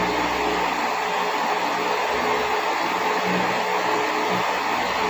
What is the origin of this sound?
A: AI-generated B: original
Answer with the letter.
B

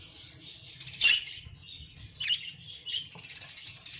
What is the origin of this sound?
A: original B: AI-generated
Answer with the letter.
A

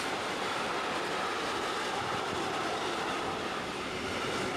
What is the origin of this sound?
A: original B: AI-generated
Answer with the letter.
B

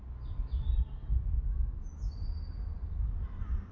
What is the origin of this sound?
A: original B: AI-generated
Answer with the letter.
A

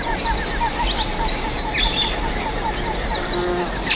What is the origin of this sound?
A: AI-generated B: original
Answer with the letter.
B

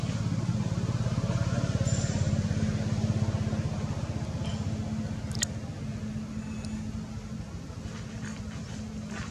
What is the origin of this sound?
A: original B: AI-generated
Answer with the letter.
A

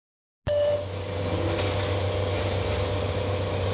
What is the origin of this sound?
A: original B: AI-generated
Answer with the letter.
A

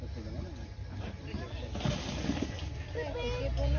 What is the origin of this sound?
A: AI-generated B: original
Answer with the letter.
B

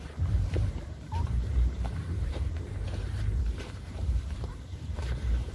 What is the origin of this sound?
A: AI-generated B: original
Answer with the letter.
A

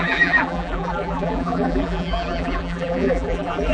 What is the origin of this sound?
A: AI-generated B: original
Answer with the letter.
A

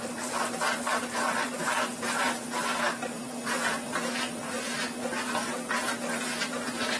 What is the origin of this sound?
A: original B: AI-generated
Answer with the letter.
B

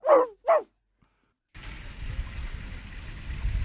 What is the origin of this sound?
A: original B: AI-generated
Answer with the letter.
A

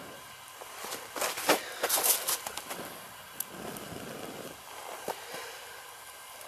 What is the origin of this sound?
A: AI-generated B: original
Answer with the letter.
B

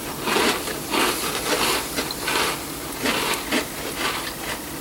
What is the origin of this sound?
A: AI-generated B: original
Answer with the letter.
A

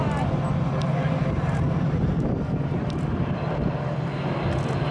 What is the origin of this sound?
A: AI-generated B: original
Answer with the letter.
A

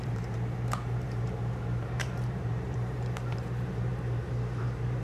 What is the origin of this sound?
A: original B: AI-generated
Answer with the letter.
B